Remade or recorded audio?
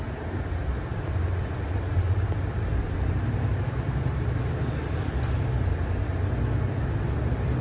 recorded